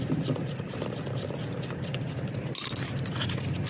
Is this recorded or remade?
recorded